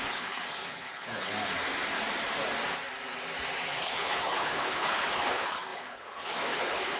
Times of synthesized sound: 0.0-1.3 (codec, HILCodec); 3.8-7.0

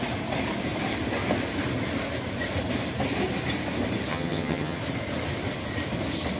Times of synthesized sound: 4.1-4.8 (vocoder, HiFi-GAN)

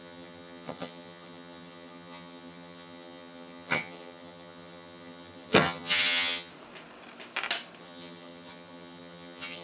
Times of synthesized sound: 0.0-6.5 (vocoder, HiFi-GAN); 7.8-9.6